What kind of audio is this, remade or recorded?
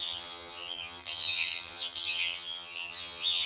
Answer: remade